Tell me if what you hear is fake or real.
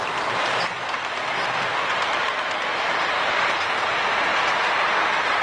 fake